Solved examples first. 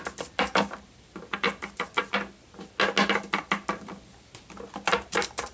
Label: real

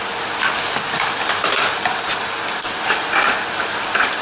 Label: real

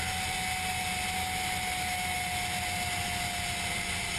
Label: real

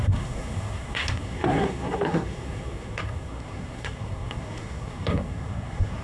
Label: fake